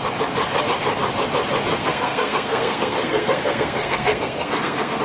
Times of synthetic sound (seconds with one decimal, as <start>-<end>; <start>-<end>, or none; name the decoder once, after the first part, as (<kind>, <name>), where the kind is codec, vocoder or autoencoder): 1.7-5.0 (codec, SNAC)